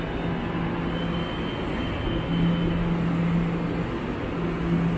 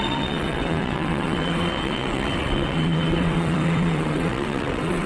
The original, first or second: first